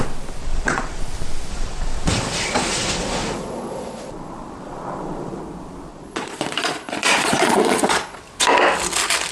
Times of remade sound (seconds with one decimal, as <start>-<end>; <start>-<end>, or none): 0.4-1.0; 1.5-5.4; 5.9-8.2